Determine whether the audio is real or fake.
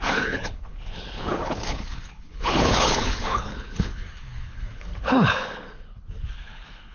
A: fake